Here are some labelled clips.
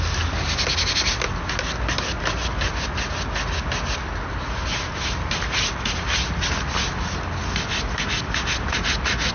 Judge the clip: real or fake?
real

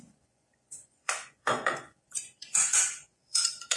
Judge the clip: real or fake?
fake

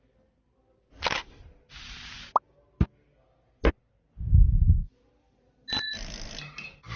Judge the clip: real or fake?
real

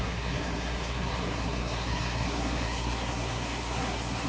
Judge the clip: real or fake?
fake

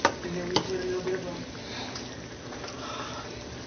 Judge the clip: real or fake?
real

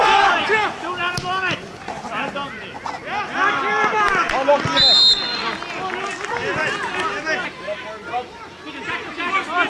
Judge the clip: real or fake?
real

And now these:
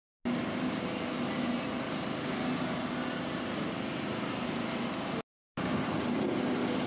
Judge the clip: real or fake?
real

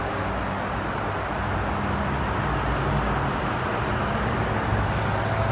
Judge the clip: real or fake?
real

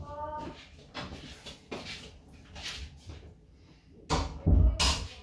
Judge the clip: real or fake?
real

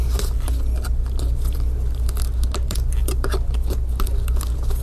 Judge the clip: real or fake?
real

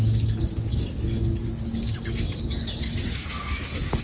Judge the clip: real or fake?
fake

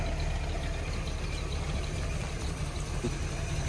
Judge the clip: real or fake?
real